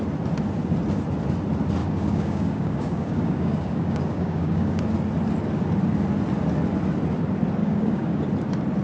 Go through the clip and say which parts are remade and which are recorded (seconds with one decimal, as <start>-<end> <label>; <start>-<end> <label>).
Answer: 0.0-1.8 recorded; 1.8-4.8 remade; 4.8-7.6 recorded; 7.6-8.2 remade; 8.2-8.8 recorded